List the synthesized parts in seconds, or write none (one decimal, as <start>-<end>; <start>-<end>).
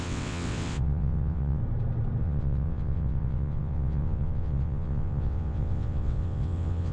0.0-1.6; 2.2-6.9